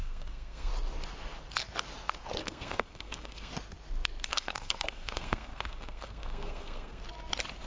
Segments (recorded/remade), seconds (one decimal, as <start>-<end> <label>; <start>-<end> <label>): 0.0-0.7 remade; 0.7-2.4 recorded; 2.4-3.5 remade; 3.5-4.3 recorded; 4.3-7.0 remade; 7.0-7.7 recorded